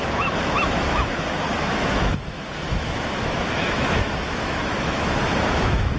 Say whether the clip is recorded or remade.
remade